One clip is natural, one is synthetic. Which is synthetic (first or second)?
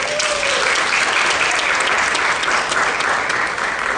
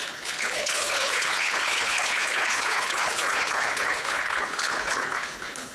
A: second